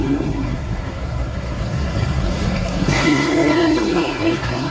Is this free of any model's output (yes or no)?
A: no